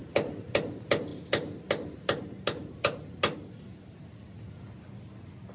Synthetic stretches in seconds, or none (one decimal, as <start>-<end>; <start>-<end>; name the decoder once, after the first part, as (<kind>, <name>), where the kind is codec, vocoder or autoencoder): none